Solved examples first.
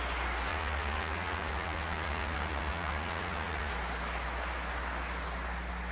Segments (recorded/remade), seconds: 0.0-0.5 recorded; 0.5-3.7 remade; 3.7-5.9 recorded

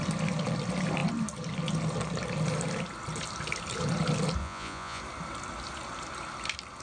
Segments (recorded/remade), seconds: 0.0-4.4 recorded; 4.4-5.0 remade; 5.0-6.8 recorded

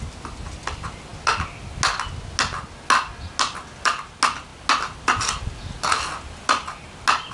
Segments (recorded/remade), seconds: 0.0-7.3 recorded

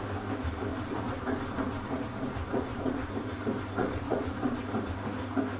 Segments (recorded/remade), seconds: 0.0-0.7 recorded; 0.7-3.1 remade; 3.1-3.8 recorded; 3.8-4.6 remade; 4.6-5.6 recorded

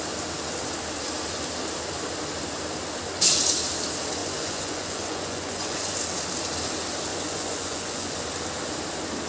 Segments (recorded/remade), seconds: 0.0-4.2 recorded; 4.2-6.0 remade; 6.0-7.1 recorded; 7.1-8.2 remade; 8.2-9.3 recorded

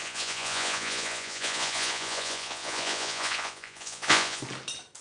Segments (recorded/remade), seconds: 0.0-4.4 remade; 4.4-5.0 recorded

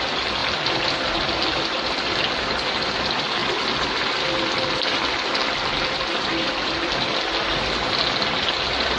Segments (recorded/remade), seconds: 0.0-9.0 recorded